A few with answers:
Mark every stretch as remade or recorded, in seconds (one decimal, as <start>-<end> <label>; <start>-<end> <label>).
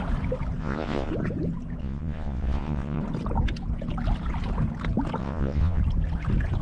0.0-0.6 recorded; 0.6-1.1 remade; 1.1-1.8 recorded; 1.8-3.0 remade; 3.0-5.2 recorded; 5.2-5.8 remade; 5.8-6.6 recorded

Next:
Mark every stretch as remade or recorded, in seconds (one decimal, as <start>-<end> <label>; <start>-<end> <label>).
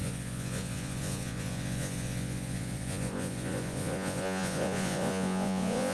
0.0-5.9 remade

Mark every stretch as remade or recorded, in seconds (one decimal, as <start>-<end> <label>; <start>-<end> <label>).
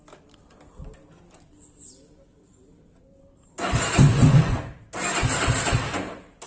0.0-4.1 recorded; 4.1-4.7 remade; 4.7-6.5 recorded